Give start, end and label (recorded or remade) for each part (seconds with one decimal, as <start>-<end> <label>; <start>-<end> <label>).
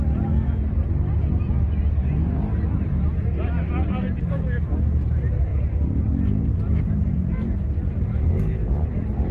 0.0-9.3 recorded